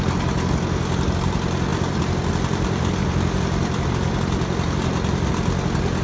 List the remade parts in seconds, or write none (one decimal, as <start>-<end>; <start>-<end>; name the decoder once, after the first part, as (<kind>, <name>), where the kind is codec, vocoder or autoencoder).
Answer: 1.7-5.3 (vocoder, BigVGAN v2)

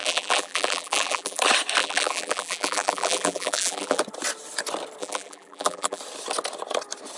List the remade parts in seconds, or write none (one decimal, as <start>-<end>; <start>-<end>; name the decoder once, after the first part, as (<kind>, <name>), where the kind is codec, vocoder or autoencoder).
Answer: 0.0-1.4 (vocoder, BigVGAN v2); 1.8-4.0; 5.0-6.0

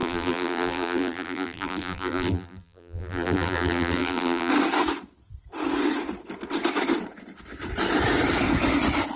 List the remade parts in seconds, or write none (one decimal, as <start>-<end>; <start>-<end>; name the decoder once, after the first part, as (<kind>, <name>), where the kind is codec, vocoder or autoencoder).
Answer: 0.0-4.5 (vocoder, BigVGAN v2)

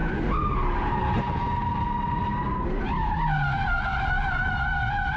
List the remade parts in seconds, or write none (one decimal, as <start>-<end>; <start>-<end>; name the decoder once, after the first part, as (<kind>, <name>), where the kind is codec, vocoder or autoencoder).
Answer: none

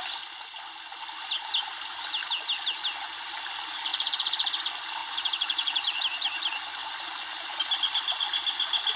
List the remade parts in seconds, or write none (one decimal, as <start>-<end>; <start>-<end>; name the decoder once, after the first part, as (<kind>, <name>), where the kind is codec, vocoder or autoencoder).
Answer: 3.9-4.6 (vocoder, BigVGAN v2); 5.0-6.0

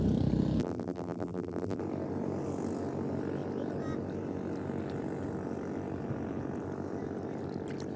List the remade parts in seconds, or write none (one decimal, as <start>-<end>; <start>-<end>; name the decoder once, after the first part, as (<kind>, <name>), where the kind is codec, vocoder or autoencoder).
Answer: 0.6-1.8 (vocoder, BigVGAN v2)

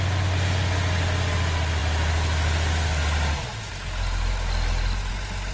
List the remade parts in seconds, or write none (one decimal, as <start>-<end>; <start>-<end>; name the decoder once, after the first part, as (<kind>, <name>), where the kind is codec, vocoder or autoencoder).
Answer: none

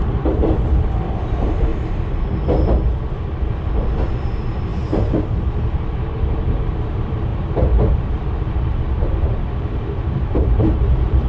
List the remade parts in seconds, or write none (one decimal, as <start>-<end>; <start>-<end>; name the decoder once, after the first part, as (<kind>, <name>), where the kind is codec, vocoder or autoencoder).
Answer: 0.0-1.7 (vocoder, BigVGAN v2); 4.1-11.3